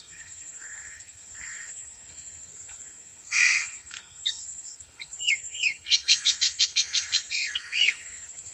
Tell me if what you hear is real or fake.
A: fake